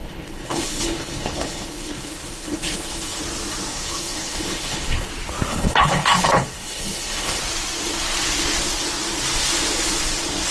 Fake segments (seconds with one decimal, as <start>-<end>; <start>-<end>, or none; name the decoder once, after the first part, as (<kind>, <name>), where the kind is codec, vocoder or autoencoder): 0.0-3.2 (codec, HILCodec); 3.7-5.1; 5.5-7.4